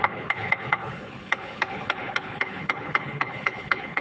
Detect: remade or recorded remade